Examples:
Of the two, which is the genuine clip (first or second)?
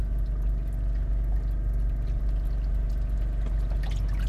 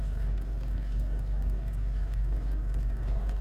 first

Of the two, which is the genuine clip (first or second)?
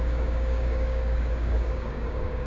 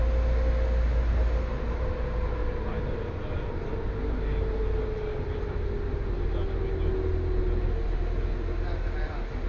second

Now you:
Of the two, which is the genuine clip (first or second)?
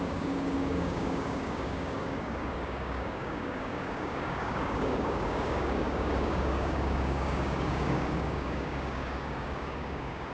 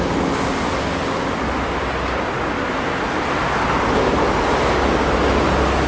second